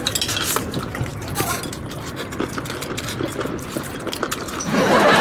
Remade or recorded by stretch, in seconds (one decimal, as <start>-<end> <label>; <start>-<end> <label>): 0.0-5.2 recorded

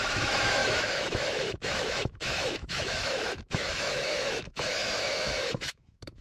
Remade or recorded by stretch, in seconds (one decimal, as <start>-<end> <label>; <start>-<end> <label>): 0.0-6.2 remade

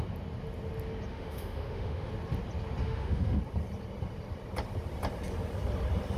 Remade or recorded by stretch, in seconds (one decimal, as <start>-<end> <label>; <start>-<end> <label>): 0.0-1.1 recorded; 1.1-2.1 remade; 2.1-2.8 recorded; 2.8-3.4 remade; 3.4-6.2 recorded

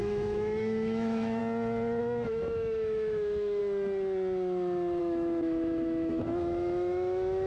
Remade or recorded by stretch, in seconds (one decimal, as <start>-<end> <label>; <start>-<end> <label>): 0.0-1.4 remade; 1.4-2.0 recorded; 2.0-3.6 remade; 3.6-5.0 recorded; 5.0-7.5 remade

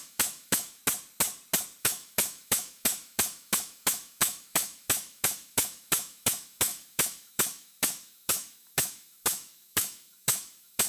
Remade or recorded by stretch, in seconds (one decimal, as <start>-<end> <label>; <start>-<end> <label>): 0.0-0.8 remade; 0.8-1.8 recorded; 1.8-10.9 remade

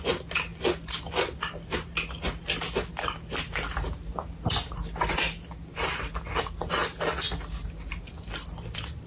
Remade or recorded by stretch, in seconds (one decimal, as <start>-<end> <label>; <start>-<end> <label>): 0.0-9.1 recorded